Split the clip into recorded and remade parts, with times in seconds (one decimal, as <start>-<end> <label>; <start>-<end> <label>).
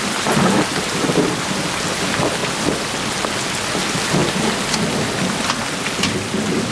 0.0-2.4 recorded; 2.4-3.3 remade; 3.3-6.7 recorded